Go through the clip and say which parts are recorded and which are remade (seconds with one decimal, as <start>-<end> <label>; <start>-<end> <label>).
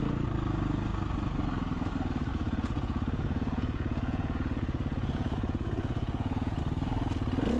0.0-2.3 recorded; 2.3-6.6 remade; 6.6-7.6 recorded